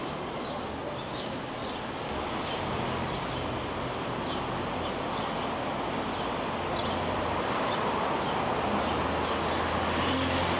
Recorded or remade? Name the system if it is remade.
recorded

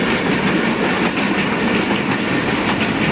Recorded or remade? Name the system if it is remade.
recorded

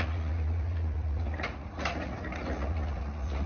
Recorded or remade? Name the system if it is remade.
remade, vocoder, Vocos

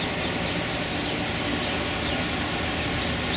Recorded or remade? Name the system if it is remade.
recorded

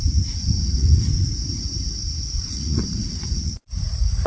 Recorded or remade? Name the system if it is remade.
remade, vocoder, Vocos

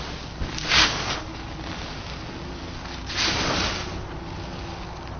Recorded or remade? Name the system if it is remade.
recorded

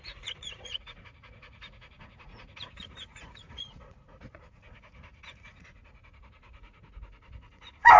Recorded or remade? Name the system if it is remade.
remade, vocoder, Vocos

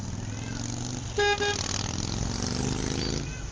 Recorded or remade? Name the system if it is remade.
recorded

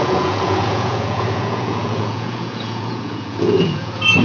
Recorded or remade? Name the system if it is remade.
remade, vocoder, Vocos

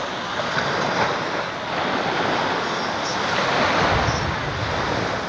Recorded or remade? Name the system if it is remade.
recorded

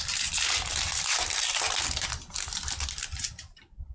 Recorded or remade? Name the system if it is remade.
recorded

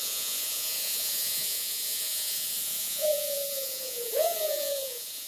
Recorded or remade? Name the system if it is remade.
remade, vocoder, Vocos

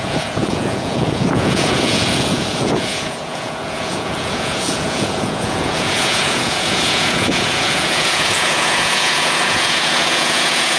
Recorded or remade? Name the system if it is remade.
remade, vocoder, Vocos